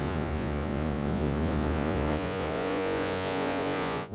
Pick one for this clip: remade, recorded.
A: remade